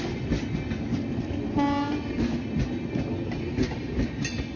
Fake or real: real